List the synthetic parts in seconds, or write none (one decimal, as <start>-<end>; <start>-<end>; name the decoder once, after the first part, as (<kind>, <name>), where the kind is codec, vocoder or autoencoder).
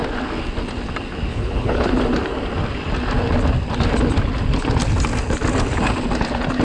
1.3-1.9 (codec, HILCodec)